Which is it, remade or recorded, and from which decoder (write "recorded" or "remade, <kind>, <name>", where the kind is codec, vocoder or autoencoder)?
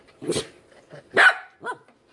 recorded